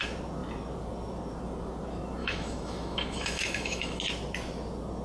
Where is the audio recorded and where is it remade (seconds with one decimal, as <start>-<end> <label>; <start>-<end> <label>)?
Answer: 0.0-2.2 recorded; 2.2-4.0 remade; 4.0-5.0 recorded

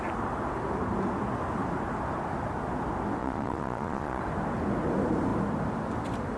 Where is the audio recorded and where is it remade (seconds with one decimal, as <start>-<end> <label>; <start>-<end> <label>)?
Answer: 0.0-3.2 recorded; 3.2-4.2 remade; 4.2-6.4 recorded

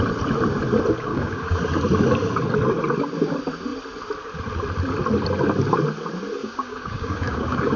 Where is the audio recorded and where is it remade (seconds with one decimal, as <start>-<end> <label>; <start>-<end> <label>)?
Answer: 0.0-1.1 recorded; 1.1-1.6 remade; 1.6-6.4 recorded; 6.4-7.8 remade

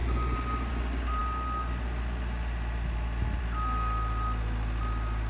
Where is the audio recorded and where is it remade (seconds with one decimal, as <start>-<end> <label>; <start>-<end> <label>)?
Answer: 0.0-0.7 remade; 0.7-5.3 recorded